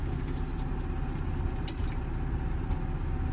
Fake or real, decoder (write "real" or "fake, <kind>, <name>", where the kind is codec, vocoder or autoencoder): real